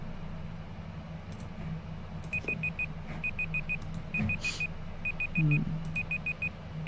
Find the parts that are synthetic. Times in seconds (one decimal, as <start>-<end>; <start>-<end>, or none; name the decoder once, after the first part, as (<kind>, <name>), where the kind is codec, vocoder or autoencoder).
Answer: none